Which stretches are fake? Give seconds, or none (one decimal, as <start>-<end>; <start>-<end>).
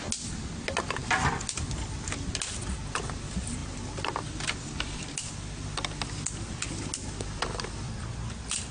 none